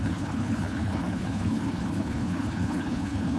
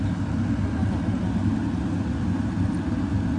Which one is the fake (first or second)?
first